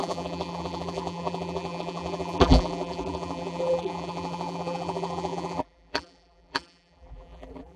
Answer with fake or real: fake